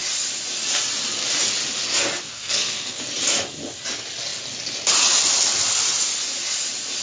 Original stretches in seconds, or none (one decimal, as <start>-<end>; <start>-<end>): 0.0-2.3; 3.0-7.0